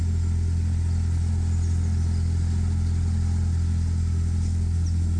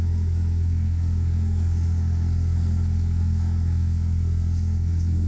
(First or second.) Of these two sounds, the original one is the first